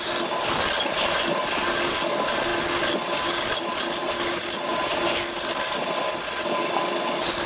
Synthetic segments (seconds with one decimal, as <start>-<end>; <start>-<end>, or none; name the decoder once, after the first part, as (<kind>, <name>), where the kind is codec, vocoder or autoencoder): none